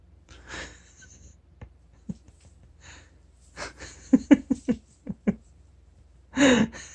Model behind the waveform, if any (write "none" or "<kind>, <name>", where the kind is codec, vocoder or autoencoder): vocoder, BigVGAN v2